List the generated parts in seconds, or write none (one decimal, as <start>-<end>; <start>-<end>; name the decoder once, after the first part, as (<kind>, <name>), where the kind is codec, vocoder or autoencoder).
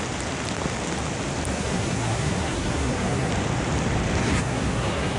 1.5-3.3 (codec, SNAC); 4.2-5.2